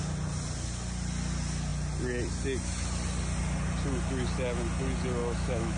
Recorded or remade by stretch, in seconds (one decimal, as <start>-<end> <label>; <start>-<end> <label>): 0.0-5.2 recorded; 5.2-5.8 remade